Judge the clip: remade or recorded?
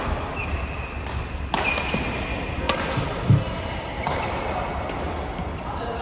recorded